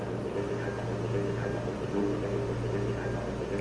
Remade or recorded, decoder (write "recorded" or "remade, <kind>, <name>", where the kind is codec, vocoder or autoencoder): recorded